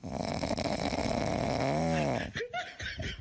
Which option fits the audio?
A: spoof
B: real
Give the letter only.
B